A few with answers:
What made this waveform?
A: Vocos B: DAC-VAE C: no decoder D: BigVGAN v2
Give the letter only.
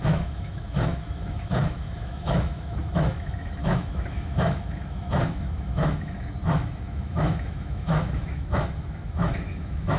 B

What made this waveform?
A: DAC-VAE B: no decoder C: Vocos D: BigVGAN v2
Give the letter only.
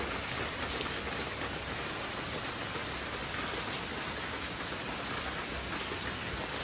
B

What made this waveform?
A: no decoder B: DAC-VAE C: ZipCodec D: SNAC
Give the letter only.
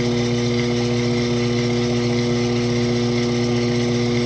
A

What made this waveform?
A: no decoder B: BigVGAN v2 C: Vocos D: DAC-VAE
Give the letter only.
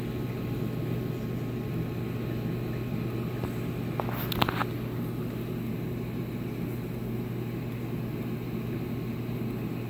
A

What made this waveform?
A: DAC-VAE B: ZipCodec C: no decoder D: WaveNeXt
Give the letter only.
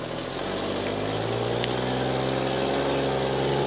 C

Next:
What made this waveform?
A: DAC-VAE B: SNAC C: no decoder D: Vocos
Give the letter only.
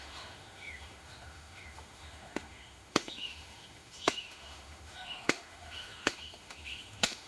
A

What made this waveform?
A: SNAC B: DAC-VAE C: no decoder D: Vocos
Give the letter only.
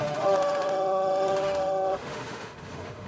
B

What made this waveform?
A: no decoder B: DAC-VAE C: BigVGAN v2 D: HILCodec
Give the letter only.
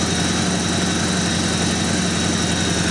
A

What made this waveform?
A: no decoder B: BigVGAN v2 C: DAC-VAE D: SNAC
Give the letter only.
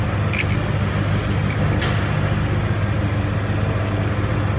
A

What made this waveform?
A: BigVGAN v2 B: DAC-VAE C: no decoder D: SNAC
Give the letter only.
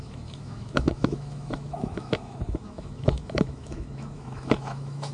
B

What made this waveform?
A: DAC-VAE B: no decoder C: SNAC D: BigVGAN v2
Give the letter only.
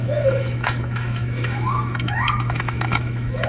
A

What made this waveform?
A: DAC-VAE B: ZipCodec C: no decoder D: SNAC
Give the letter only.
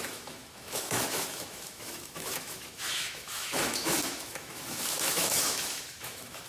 A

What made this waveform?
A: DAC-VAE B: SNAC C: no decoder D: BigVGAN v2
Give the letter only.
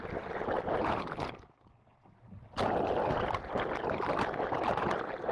C